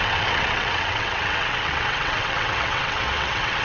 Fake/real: fake